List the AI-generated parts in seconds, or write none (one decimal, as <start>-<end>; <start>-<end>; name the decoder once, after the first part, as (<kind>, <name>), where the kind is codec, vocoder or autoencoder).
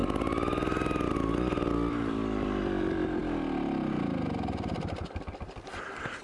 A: 1.1-6.2 (vocoder, BigVGAN v2)